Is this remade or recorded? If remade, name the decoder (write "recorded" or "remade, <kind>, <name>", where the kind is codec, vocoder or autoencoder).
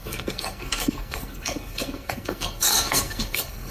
remade, codec, SNAC